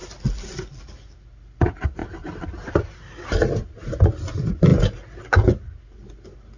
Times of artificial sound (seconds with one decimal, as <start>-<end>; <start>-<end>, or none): none